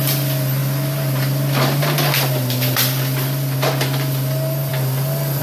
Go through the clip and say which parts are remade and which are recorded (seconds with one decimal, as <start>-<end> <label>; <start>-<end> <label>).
0.0-5.4 recorded